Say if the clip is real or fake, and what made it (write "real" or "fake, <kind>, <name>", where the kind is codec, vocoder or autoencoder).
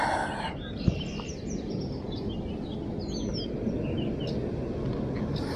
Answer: real